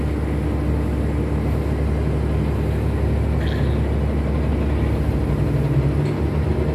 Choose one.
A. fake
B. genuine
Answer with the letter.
B